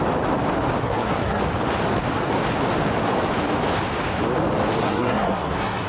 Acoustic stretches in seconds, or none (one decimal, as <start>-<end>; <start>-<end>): 0.0-0.8; 1.4-4.8